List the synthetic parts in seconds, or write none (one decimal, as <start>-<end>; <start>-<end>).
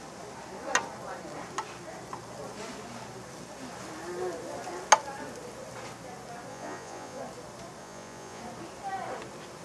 6.5-7.2; 7.8-8.4